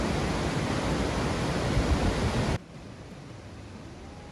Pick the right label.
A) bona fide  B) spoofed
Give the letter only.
A